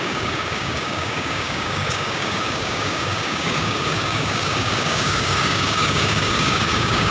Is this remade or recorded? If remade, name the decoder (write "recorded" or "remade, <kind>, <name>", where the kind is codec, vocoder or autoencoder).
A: remade, codec, DAC